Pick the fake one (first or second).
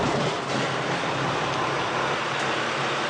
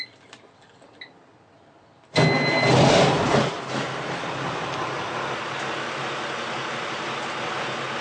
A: first